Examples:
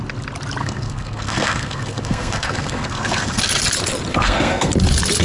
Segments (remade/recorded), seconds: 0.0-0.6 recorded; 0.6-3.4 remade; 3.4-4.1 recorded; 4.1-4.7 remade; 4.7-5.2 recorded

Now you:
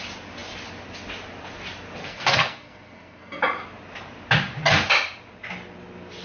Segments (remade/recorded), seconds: 0.0-2.0 recorded; 2.0-3.4 remade; 3.4-6.2 recorded

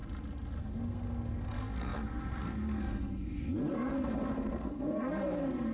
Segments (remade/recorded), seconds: 0.0-0.6 recorded; 0.6-5.7 remade

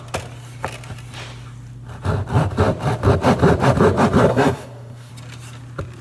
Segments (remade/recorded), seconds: 0.0-4.3 recorded; 4.3-5.1 remade; 5.1-6.0 recorded

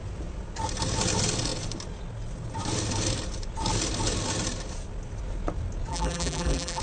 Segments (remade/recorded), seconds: 0.0-5.9 recorded; 5.9-6.8 remade

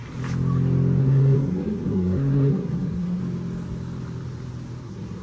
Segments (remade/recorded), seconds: 0.0-1.0 recorded; 1.0-3.2 remade; 3.2-4.8 recorded; 4.8-5.2 remade

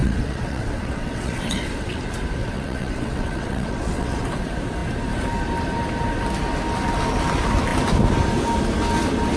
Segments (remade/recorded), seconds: 0.0-2.0 remade; 2.0-2.4 recorded; 2.4-4.2 remade; 4.2-9.4 recorded

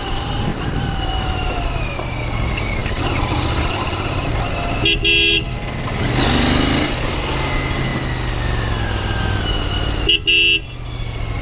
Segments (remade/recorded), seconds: 0.0-0.5 recorded; 0.5-1.7 remade; 1.7-2.8 recorded; 2.8-3.7 remade; 3.7-11.4 recorded